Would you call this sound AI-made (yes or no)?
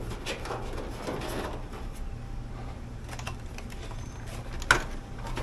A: no